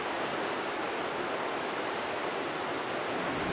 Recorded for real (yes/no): yes